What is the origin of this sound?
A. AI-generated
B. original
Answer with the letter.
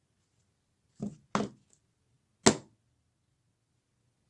B